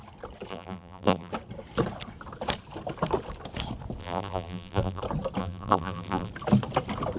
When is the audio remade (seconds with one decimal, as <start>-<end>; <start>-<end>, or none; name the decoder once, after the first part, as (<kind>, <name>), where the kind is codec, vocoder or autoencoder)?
0.5-1.3 (vocoder, BigVGAN v2); 4.0-5.0; 5.4-6.3